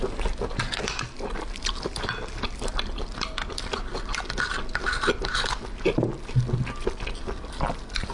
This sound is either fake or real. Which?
real